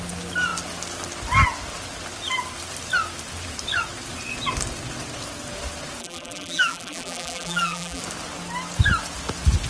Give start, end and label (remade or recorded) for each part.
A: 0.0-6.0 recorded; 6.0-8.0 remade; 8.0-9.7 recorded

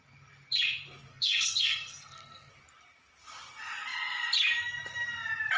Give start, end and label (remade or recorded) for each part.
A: 0.0-1.1 recorded; 1.1-2.5 remade; 2.5-5.6 recorded

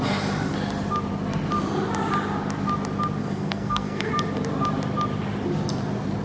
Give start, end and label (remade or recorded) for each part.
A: 0.0-3.2 recorded; 3.2-4.1 remade; 4.1-6.2 recorded

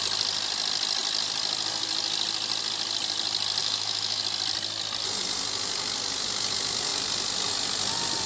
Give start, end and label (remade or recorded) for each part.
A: 0.0-3.6 recorded; 3.6-4.2 remade; 4.2-8.3 recorded

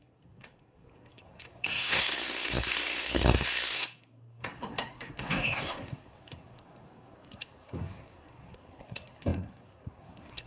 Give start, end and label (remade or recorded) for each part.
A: 0.0-10.5 remade